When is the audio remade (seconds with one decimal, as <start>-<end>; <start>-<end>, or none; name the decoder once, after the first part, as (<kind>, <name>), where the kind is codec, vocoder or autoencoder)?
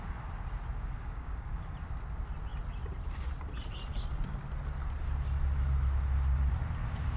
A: 1.0-1.7 (codec, DAC)